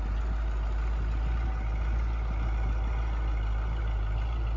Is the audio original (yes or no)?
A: yes